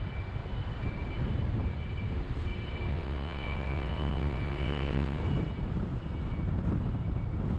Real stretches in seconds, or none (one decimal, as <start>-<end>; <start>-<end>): 0.0-2.9; 5.2-7.6